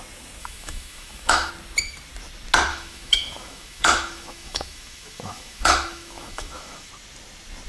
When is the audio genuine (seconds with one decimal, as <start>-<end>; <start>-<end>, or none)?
0.0-0.4; 1.5-2.7; 6.9-7.7